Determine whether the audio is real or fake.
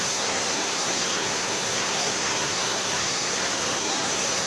fake